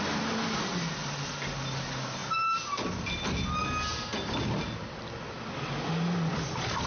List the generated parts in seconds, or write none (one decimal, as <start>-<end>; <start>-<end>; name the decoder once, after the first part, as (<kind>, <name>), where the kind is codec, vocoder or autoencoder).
none